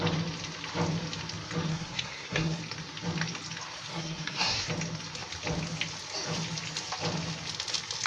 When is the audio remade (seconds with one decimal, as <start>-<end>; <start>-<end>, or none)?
1.7-2.6; 3.9-4.7

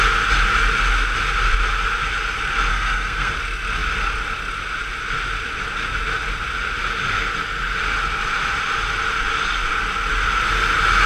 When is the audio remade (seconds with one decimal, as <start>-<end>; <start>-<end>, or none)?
2.7-3.3

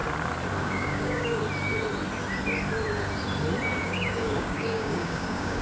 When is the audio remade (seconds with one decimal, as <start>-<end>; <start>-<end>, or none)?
0.6-1.4; 3.8-5.6